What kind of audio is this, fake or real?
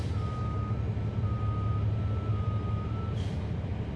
real